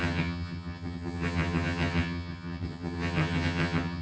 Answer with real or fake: fake